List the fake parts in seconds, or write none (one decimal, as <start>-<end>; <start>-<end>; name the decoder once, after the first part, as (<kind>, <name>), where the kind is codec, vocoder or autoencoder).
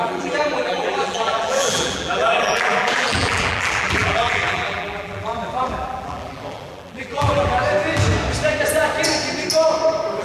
0.0-7.6 (vocoder, BigVGAN v2)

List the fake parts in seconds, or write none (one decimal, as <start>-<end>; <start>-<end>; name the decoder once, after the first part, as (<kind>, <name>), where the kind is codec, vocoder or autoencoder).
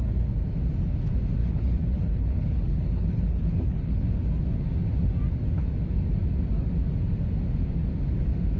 1.4-4.1 (codec, HILCodec)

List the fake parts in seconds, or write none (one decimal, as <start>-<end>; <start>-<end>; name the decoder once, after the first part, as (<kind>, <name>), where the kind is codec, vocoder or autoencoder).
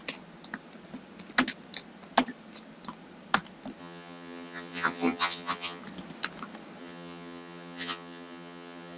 3.8-5.8 (vocoder, HiFi-GAN); 6.8-9.0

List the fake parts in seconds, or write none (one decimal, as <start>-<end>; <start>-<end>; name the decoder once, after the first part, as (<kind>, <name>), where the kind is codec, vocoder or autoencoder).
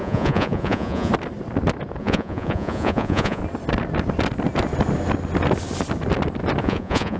0.0-1.1 (vocoder, Vocos); 2.0-3.4; 6.6-7.2